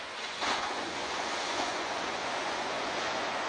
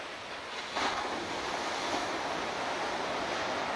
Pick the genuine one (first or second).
second